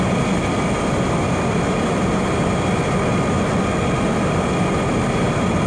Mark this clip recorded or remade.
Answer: recorded